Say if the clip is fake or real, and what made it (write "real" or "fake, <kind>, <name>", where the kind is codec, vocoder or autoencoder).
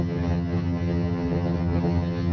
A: fake, vocoder, HiFi-GAN